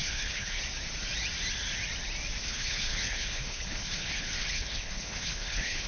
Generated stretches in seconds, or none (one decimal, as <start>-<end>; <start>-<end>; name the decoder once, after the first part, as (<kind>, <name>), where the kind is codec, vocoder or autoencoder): 0.0-0.6 (codec, HILCodec); 2.4-5.9